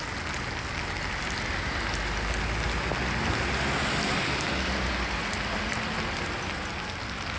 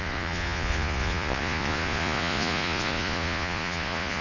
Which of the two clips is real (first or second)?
first